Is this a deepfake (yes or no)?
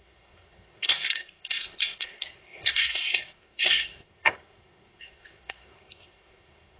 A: yes